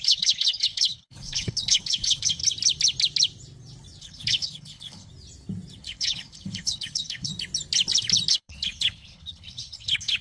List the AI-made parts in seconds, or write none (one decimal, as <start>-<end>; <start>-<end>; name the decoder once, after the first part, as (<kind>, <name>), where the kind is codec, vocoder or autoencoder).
0.0-2.4 (codec, HILCodec); 4.0-5.1; 5.8-7.3; 8.3-10.2